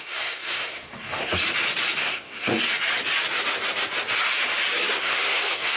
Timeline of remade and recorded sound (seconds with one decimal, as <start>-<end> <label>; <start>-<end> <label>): 0.0-1.4 remade; 1.4-2.0 recorded; 2.0-2.5 remade; 2.5-4.9 recorded; 4.9-5.8 remade